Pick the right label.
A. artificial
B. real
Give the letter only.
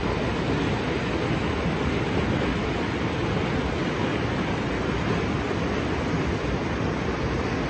B